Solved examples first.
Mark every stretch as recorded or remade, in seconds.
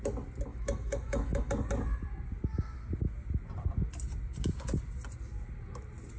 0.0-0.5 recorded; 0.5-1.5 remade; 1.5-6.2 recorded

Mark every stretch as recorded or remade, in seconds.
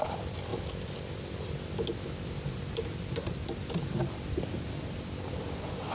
0.0-5.9 recorded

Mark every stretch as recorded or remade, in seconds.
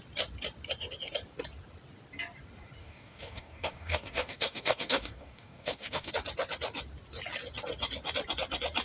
0.0-2.8 recorded; 2.8-6.1 remade; 6.1-8.8 recorded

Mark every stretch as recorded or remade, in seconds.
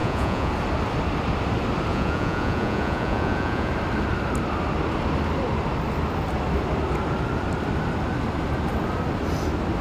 0.0-0.5 remade; 0.5-1.9 recorded; 1.9-3.7 remade; 3.7-9.8 recorded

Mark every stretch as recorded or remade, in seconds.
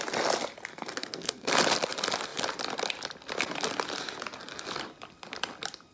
0.0-0.7 recorded; 0.7-1.5 remade; 1.5-5.9 recorded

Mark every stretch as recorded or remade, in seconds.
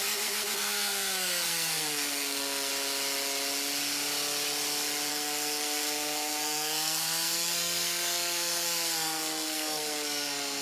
0.0-2.7 remade; 2.7-5.1 recorded; 5.1-10.6 remade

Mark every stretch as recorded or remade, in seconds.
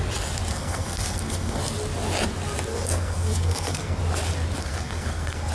0.0-0.5 recorded; 0.5-1.6 remade; 1.6-2.7 recorded; 2.7-4.0 remade; 4.0-4.6 recorded; 4.6-5.5 remade